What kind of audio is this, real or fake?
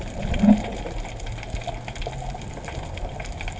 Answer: real